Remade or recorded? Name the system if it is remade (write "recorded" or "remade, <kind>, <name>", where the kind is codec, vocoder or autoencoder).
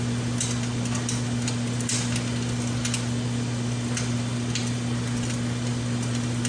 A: recorded